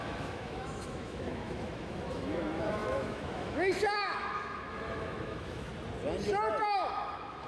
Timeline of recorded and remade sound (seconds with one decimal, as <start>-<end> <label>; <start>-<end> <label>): 0.0-5.7 remade; 5.7-6.6 recorded; 6.6-7.5 remade